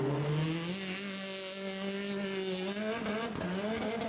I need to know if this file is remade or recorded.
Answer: recorded